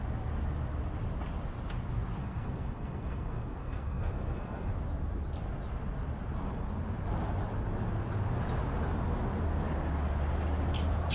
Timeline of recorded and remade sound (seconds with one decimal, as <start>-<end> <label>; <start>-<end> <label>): 0.0-2.2 recorded; 2.2-4.7 remade; 4.7-11.1 recorded